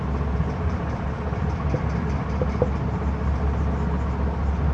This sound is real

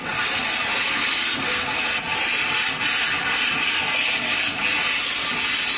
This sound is real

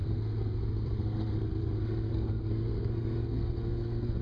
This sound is fake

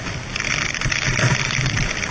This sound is real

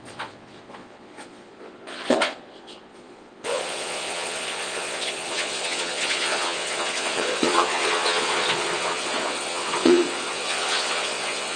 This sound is fake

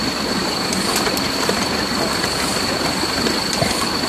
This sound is real